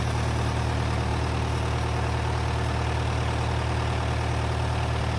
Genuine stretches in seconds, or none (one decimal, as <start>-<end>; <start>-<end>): 0.0-5.2

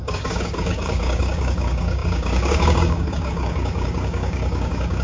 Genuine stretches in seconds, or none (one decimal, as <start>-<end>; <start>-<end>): none